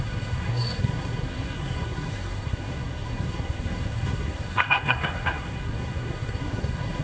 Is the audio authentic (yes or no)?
no